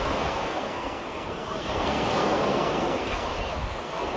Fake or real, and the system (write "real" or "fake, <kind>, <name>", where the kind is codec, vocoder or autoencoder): fake, codec, SNAC